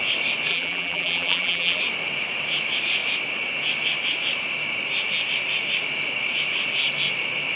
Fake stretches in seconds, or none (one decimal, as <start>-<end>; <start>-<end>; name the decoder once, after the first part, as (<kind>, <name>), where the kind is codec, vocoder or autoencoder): 0.5-1.8 (vocoder, BigVGAN v2)